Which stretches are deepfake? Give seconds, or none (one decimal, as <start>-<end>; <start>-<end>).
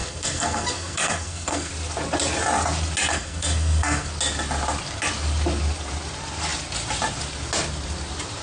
0.0-1.7; 3.1-4.1